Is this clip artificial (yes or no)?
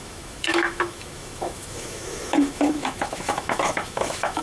yes